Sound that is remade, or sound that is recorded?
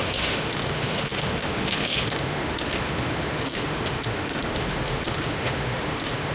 remade